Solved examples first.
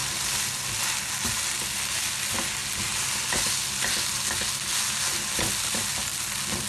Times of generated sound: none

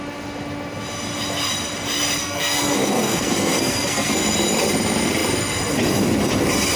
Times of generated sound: 2.2-4.2

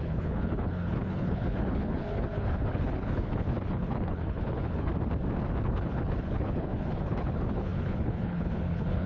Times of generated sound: 0.0-4.9; 5.6-9.1

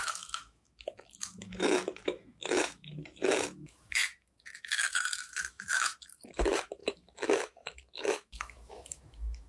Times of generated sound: 0.0-9.5